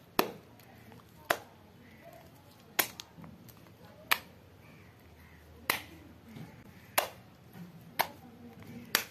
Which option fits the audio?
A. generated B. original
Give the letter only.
B